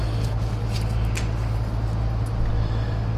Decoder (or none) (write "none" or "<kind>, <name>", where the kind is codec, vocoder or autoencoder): none